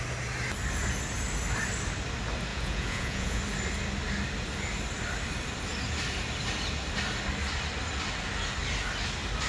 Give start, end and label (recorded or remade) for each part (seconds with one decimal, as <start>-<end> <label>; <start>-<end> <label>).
0.0-2.5 recorded; 2.5-3.4 remade; 3.4-9.5 recorded